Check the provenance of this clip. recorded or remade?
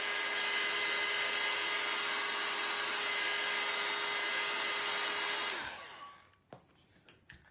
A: recorded